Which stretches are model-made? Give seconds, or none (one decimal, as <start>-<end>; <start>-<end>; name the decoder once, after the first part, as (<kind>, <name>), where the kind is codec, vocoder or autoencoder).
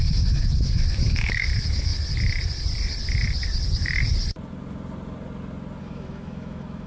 0.0-1.9 (autoencoder, DAC-VAE); 5.8-6.9